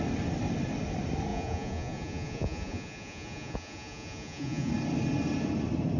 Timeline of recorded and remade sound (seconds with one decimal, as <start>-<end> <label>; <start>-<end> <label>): 0.0-1.3 recorded; 1.3-4.7 remade; 4.7-6.0 recorded